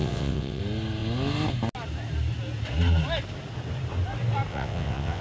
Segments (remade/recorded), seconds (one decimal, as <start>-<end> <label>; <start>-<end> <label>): 0.0-0.6 remade; 0.6-4.5 recorded; 4.5-5.2 remade